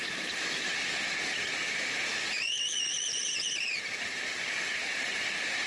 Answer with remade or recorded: remade